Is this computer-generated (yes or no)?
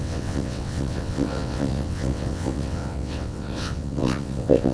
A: yes